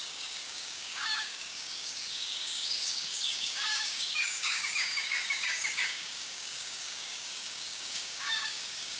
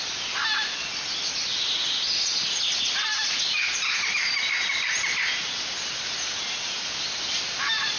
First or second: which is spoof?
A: first